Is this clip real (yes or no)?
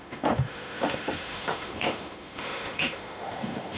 no